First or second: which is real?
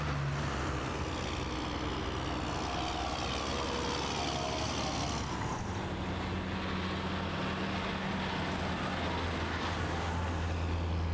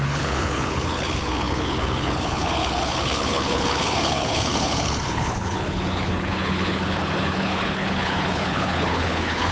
first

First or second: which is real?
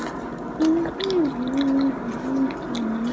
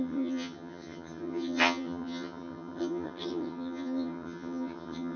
first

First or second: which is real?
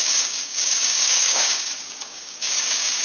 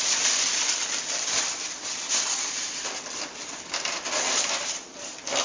second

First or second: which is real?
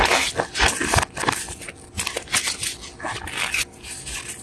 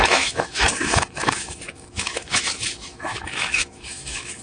first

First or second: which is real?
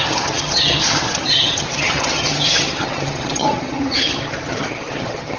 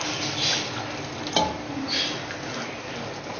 second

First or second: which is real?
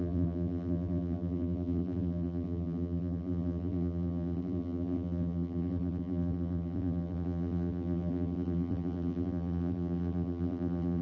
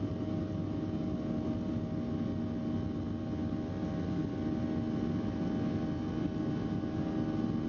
second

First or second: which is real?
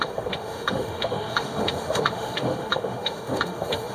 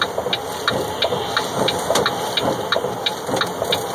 second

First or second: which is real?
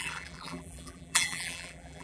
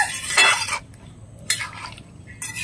second